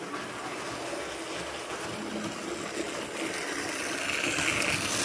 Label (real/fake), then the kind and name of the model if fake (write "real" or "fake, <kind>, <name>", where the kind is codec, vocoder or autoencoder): real